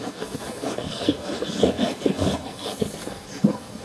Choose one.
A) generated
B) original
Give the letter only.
A